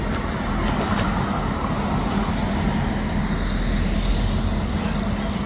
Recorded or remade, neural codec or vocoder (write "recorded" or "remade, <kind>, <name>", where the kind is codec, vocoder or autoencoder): recorded